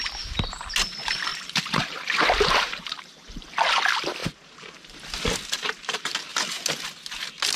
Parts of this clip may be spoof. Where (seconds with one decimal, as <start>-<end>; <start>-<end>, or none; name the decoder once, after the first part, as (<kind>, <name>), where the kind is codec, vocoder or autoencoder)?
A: 1.3-3.8 (vocoder, BigVGAN v2); 4.2-5.2; 6.3-6.8